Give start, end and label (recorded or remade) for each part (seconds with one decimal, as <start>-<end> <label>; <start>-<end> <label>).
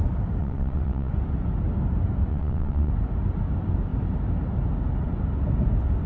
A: 0.0-0.4 recorded; 0.4-1.1 remade; 1.1-2.3 recorded; 2.3-2.9 remade; 2.9-6.1 recorded